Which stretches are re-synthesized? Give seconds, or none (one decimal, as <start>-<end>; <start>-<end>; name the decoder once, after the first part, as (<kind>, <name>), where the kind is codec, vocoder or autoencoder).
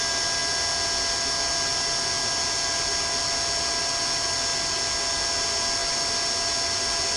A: none